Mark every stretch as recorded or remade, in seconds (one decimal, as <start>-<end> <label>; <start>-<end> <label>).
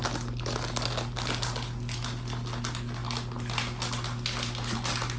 0.0-5.2 recorded